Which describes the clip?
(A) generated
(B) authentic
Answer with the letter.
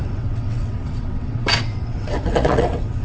A